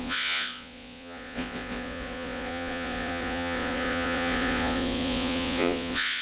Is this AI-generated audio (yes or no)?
yes